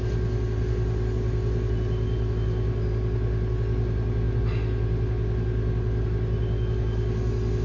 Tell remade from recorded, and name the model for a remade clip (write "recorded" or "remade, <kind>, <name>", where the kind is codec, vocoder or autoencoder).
recorded